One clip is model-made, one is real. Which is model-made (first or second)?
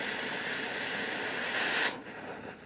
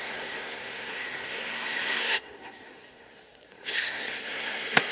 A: second